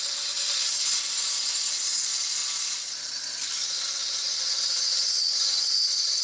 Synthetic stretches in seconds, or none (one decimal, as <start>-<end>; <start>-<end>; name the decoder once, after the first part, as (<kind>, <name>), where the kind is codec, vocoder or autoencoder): none